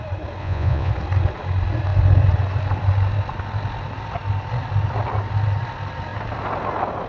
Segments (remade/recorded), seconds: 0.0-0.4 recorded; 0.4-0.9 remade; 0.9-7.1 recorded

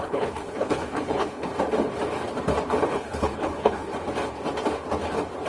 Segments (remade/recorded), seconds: 0.0-1.5 remade; 1.5-2.9 recorded; 2.9-3.9 remade; 3.9-5.5 recorded

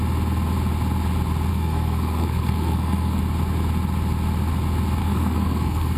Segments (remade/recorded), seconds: 0.0-1.5 recorded; 1.5-3.2 remade; 3.2-5.0 recorded; 5.0-6.0 remade